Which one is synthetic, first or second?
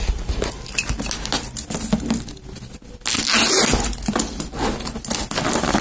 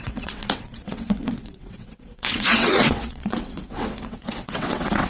second